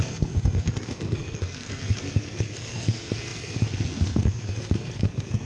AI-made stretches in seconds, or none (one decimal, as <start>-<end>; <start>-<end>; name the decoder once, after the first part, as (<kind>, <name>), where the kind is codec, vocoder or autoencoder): 0.0-5.5 (codec, SNAC)